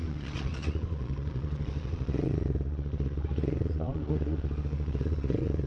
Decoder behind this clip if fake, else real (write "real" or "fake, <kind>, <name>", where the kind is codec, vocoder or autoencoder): fake, vocoder, Vocos